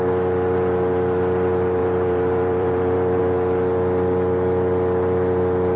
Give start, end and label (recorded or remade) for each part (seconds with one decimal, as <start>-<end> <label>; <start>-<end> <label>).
0.0-1.8 recorded; 1.8-3.2 remade; 3.2-5.8 recorded